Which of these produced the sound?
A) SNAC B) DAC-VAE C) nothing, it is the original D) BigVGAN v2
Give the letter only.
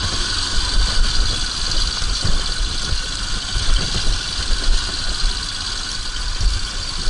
C